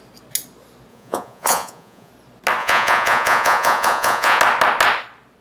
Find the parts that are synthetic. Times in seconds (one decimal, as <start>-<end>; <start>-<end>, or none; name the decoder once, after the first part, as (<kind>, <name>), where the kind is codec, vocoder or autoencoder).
0.9-2.1 (vocoder, Vocos); 2.6-4.4